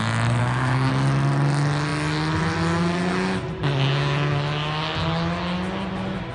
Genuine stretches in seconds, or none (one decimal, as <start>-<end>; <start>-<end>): 0.0-0.4; 0.9-6.3